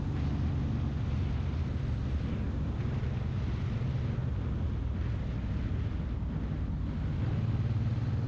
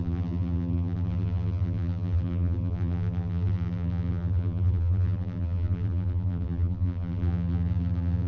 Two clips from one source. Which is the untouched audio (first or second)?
first